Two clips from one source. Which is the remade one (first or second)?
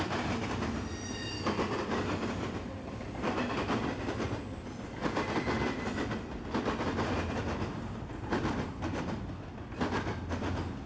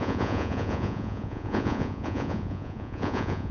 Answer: second